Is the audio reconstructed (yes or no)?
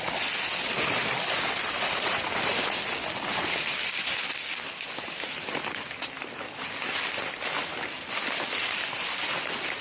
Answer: no